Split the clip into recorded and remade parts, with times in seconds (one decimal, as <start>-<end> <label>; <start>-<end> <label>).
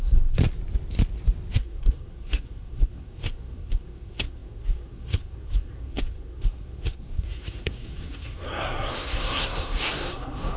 0.0-0.4 remade; 0.4-1.5 recorded; 1.5-10.6 remade